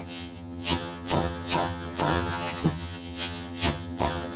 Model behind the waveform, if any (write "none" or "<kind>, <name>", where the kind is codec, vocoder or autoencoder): vocoder, HiFi-GAN